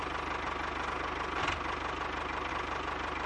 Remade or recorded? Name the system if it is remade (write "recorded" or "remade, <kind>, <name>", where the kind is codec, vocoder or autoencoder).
recorded